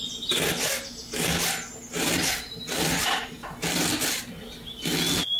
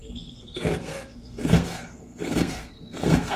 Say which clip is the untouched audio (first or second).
first